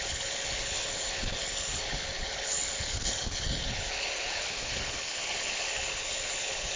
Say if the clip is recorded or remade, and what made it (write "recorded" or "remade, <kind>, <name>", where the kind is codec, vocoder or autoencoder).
remade, codec, HILCodec